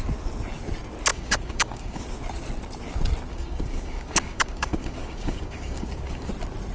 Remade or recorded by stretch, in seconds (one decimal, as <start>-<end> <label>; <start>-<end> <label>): 0.0-1.1 recorded; 1.1-2.0 remade; 2.0-3.3 recorded; 3.3-6.3 remade; 6.3-6.7 recorded